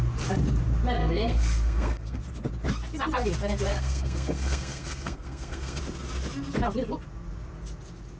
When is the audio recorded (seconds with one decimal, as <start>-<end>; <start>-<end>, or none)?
0.0-1.0; 2.2-3.7; 5.8-8.2